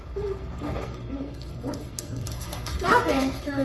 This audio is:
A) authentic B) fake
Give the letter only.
B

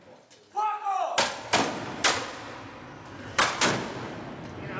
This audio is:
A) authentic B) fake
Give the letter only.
A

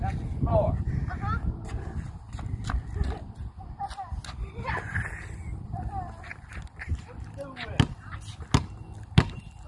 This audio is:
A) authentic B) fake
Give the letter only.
A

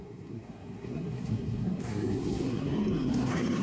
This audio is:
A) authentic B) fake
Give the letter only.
B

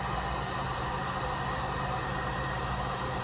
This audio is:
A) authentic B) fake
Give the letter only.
A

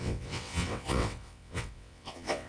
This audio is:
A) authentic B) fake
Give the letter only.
B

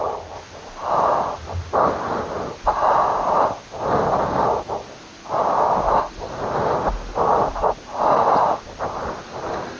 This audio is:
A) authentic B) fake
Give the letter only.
A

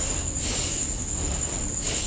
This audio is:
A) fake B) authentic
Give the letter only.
A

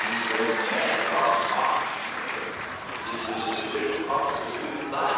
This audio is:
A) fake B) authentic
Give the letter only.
A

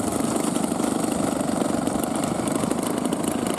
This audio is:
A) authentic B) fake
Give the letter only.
A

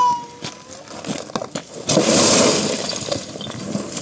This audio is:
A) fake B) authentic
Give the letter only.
B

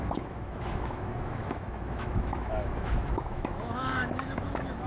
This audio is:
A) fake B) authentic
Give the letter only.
A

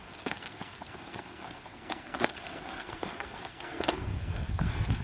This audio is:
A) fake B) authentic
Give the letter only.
A